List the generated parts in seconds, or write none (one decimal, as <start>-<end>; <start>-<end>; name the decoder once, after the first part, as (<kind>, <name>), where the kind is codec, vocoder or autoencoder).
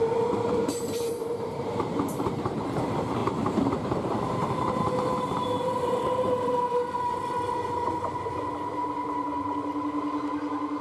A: 0.0-10.8 (vocoder, BigVGAN v2)